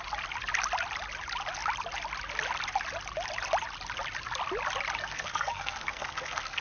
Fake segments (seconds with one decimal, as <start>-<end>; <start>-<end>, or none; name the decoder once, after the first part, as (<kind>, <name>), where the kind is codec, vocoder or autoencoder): 5.0-6.6 (codec, SNAC)